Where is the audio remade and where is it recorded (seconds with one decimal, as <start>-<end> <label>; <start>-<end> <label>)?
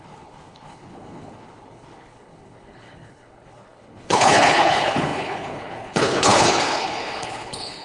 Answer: 0.0-7.8 remade